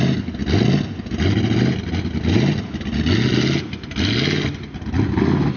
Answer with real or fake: real